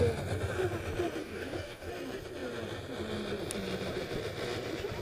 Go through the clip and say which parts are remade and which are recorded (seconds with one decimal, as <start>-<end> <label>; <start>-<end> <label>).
0.0-1.2 recorded; 1.2-1.9 remade; 1.9-5.0 recorded